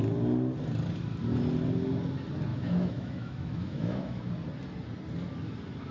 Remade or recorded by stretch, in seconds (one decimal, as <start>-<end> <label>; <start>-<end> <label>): 0.0-2.5 recorded; 2.5-4.3 remade; 4.3-5.9 recorded